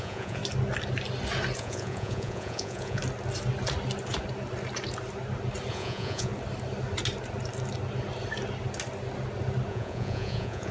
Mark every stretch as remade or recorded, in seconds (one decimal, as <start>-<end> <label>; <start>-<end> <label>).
0.0-0.4 remade; 0.4-1.6 recorded; 1.6-3.0 remade; 3.0-5.7 recorded; 5.7-6.3 remade; 6.3-9.7 recorded; 9.7-10.7 remade